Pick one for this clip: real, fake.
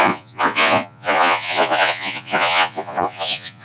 fake